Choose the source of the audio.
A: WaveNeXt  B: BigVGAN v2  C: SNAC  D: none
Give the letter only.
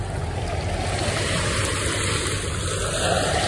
D